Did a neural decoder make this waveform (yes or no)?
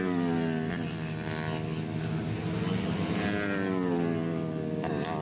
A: no